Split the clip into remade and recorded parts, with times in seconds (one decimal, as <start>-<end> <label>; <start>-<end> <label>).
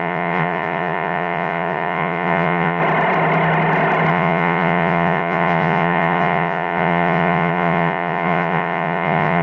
0.0-2.8 remade; 2.8-4.1 recorded; 4.1-9.4 remade